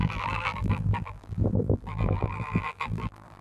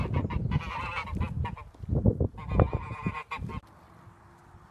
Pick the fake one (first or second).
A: first